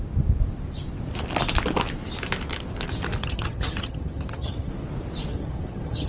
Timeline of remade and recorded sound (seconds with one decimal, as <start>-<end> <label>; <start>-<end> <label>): 0.0-3.2 recorded; 3.2-4.7 remade; 4.7-5.3 recorded; 5.3-6.1 remade